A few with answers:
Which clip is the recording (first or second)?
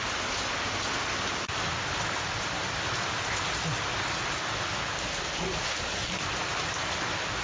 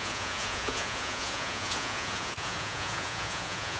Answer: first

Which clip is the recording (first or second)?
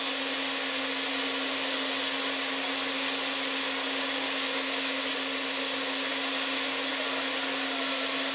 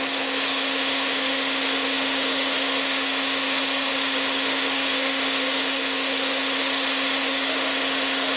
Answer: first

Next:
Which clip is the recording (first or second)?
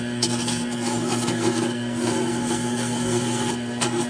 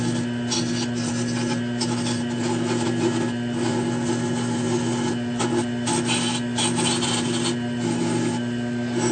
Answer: second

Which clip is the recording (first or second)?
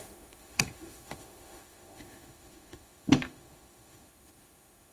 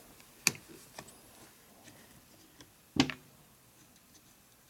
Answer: second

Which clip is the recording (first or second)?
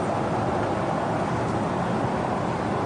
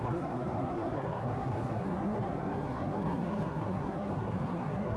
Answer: first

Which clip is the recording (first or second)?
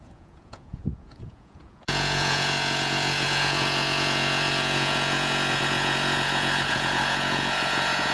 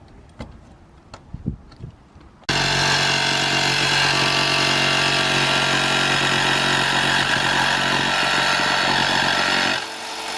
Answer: second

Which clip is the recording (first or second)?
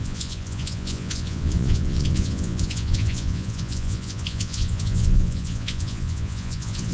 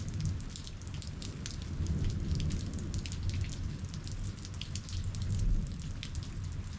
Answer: second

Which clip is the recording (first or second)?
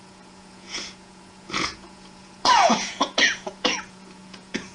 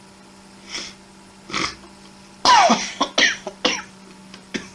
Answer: second